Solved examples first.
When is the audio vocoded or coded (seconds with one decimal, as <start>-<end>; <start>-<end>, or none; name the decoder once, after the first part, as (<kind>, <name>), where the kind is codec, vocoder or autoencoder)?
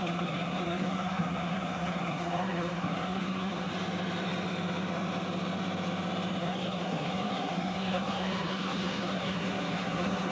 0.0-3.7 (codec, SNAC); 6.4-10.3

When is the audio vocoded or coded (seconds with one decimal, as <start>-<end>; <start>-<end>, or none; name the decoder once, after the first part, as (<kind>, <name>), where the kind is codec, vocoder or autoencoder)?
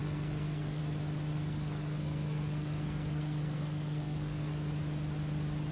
0.0-0.8 (codec, SNAC); 1.3-4.7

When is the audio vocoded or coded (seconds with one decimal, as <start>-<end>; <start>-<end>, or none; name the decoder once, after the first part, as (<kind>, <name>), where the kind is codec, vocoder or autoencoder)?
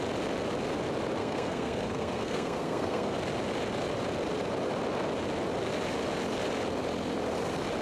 1.2-3.1 (codec, SNAC)